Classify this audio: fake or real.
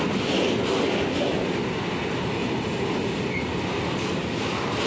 real